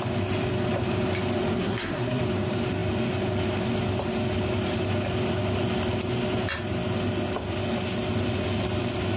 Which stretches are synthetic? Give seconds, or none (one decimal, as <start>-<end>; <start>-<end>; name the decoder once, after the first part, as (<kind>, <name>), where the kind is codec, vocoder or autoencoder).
1.6-2.2 (codec, SNAC)